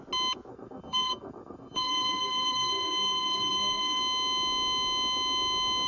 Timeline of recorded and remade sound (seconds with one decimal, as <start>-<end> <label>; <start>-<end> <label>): 0.0-0.5 recorded; 0.5-4.0 remade; 4.0-5.9 recorded